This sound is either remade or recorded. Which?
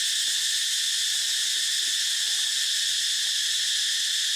recorded